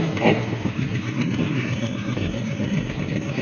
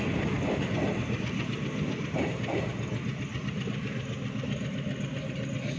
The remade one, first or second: first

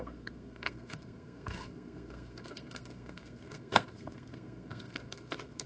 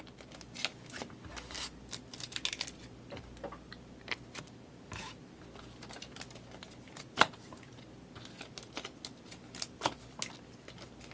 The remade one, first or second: first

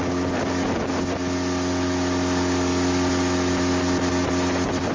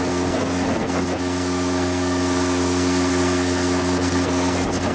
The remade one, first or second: second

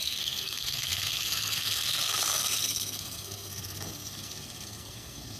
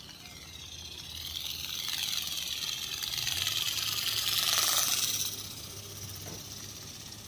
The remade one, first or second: first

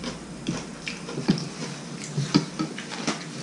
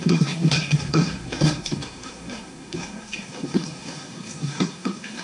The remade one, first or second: second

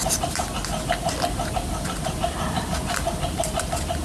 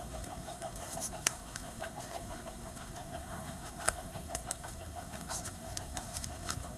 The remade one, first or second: second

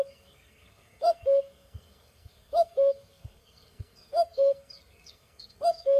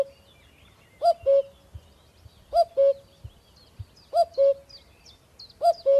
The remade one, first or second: first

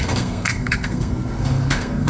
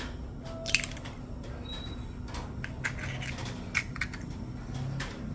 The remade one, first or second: first